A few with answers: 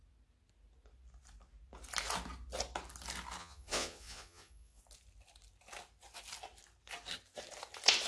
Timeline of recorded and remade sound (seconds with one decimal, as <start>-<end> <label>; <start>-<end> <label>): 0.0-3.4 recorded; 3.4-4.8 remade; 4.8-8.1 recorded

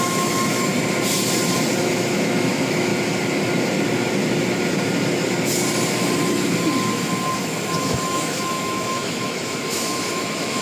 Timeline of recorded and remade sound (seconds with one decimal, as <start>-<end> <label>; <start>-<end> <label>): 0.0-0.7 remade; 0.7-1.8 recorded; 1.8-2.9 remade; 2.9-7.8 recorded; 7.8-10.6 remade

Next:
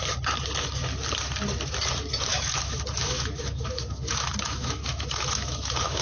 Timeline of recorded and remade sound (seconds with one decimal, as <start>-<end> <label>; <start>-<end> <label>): 0.0-2.3 recorded; 2.3-6.0 remade

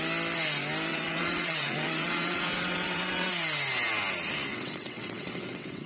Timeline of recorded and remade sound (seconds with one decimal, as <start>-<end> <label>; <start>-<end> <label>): 0.0-0.9 recorded; 0.9-3.3 remade; 3.3-4.5 recorded; 4.5-5.9 remade

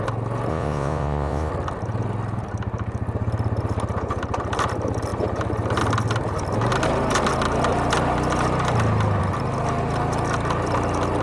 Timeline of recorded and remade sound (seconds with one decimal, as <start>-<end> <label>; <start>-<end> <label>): 0.0-0.5 recorded; 0.5-1.5 remade; 1.5-11.2 recorded

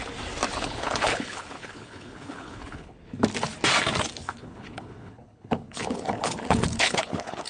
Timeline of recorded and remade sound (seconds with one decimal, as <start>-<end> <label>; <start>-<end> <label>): 0.0-0.5 recorded; 0.5-3.2 remade; 3.2-4.2 recorded; 4.2-7.5 remade

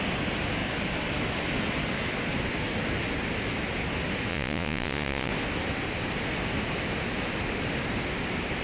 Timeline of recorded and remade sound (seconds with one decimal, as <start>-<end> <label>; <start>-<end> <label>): 0.0-4.3 recorded; 4.3-5.3 remade; 5.3-8.6 recorded

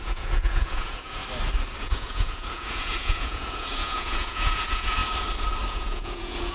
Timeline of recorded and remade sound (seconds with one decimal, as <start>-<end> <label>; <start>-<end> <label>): 0.0-1.2 remade; 1.2-1.8 recorded; 1.8-5.0 remade; 5.0-5.7 recorded; 5.7-6.5 remade